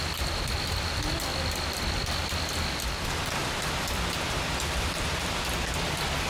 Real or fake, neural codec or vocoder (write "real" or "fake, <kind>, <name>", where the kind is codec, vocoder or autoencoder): real